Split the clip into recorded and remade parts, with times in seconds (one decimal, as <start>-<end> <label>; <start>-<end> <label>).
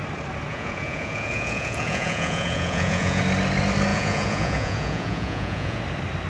0.0-0.5 recorded; 0.5-3.2 remade; 3.2-3.9 recorded; 3.9-5.8 remade; 5.8-6.3 recorded